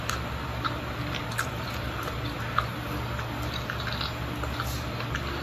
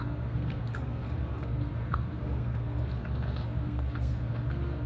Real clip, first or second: first